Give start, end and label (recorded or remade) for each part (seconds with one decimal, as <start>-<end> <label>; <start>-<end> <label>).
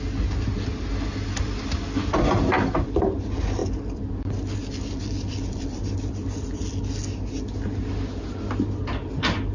0.0-9.5 recorded